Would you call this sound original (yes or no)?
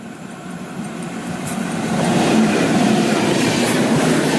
no